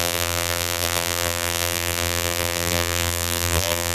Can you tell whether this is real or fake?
fake